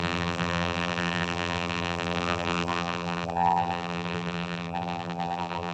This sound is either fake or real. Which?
fake